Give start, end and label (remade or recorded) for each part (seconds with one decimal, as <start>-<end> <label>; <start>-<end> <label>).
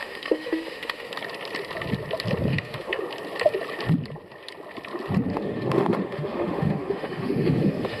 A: 0.0-1.1 remade; 1.1-2.5 recorded; 2.5-3.0 remade; 3.0-5.3 recorded; 5.3-8.0 remade